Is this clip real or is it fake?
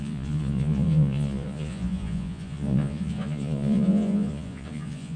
fake